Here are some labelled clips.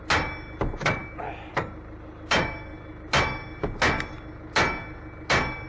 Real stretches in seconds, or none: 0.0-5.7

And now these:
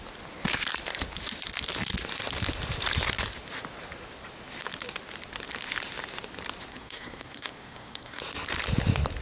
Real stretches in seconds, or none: 0.0-6.7; 8.2-9.2

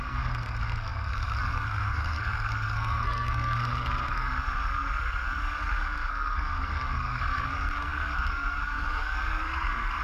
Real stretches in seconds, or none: none

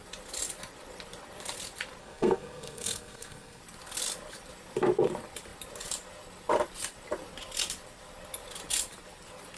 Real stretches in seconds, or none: 0.0-2.0; 3.6-9.6

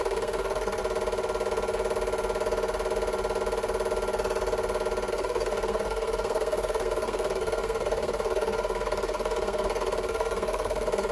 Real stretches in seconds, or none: 0.8-5.1

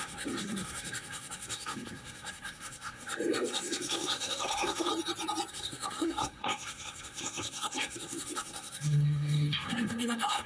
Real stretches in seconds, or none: 4.9-5.5